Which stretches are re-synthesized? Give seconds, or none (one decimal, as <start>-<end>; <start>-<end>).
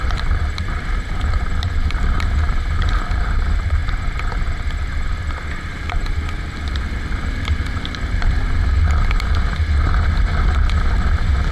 0.0-3.8; 5.5-11.5